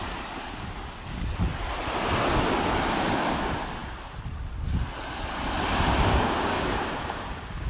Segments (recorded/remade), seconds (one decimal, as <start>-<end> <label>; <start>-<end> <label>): 0.0-6.1 recorded; 6.1-7.7 remade